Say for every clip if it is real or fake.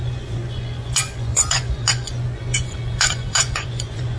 fake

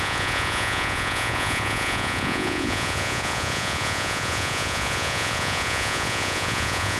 fake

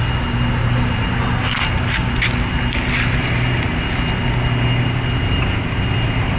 real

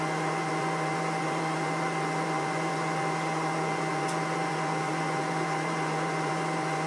fake